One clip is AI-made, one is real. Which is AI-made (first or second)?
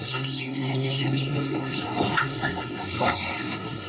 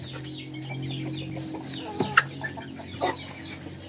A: first